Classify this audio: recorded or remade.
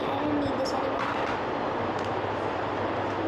recorded